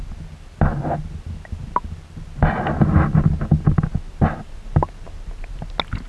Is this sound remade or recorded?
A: recorded